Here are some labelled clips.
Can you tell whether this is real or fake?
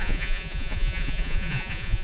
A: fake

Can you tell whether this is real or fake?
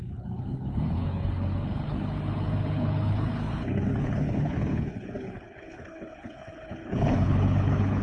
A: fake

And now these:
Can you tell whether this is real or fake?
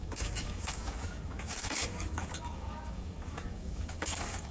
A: fake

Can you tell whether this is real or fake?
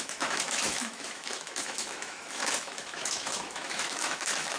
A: fake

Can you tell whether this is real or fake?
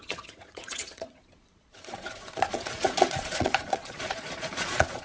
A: fake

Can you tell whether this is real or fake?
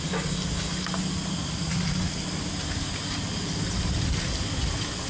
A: real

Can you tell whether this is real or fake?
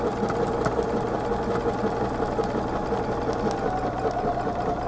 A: real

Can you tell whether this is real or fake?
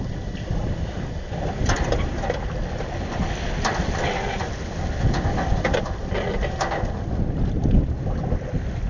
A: real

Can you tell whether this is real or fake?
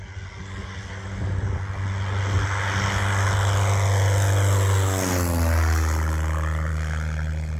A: real